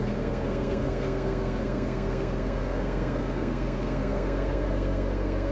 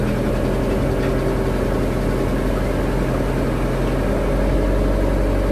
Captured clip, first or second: second